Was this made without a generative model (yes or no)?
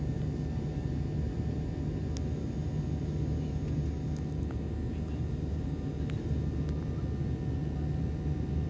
yes